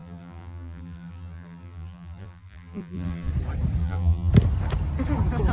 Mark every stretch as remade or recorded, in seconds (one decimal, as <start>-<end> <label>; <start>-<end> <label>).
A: 0.0-3.3 remade; 3.3-3.8 recorded; 3.8-4.3 remade; 4.3-5.5 recorded